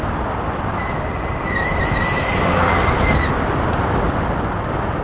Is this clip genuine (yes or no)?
yes